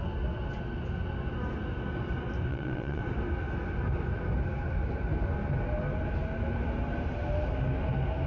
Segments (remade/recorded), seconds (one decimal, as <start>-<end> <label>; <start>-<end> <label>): 0.0-2.5 recorded; 2.5-3.0 remade; 3.0-8.3 recorded